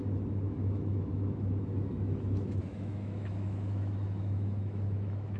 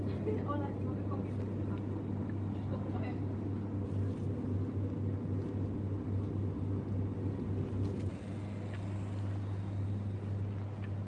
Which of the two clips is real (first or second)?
second